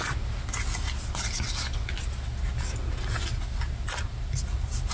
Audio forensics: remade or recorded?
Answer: recorded